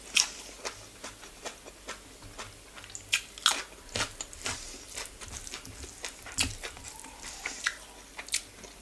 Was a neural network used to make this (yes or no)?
no